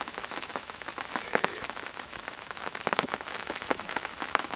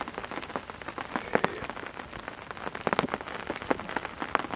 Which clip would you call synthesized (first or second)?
first